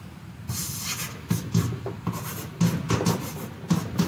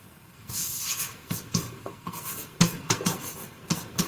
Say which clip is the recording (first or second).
first